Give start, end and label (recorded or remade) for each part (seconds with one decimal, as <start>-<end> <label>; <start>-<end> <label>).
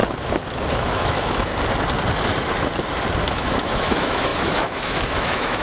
0.0-0.7 recorded; 0.7-1.5 remade; 1.5-3.3 recorded; 3.3-5.6 remade